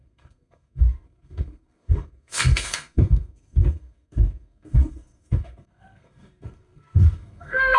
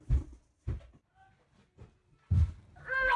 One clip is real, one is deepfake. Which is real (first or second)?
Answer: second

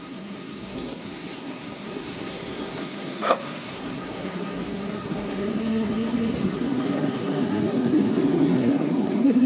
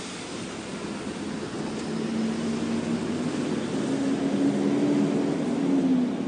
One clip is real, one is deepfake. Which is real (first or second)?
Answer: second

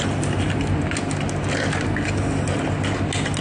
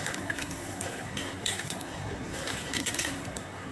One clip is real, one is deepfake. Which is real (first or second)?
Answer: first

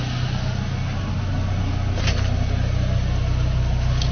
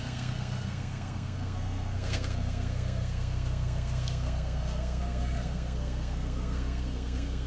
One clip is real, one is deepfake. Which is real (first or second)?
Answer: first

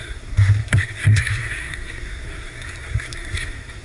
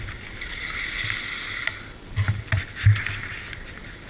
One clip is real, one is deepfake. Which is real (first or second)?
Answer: second